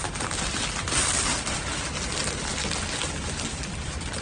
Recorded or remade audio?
recorded